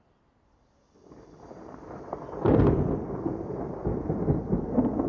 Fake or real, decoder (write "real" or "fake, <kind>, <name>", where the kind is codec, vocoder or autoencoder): fake, vocoder, BigVGAN v2